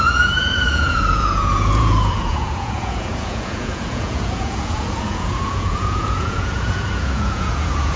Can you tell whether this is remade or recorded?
remade